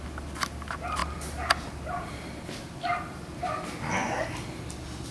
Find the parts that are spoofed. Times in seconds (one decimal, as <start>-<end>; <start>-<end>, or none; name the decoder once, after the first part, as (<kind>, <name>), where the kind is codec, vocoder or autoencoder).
1.0-3.4 (vocoder, BigVGAN v2)